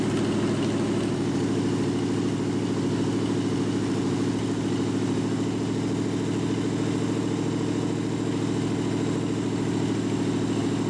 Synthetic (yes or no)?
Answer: no